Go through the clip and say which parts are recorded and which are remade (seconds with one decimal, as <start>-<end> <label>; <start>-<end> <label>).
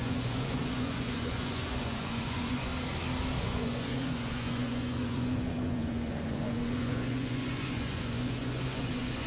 0.0-2.7 remade; 2.7-3.4 recorded; 3.4-9.3 remade